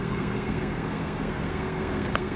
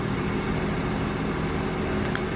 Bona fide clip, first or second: second